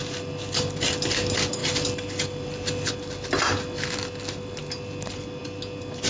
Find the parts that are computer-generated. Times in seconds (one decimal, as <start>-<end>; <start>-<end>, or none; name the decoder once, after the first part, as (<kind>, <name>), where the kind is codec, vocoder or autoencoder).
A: 1.6-2.9 (vocoder, BigVGAN v2)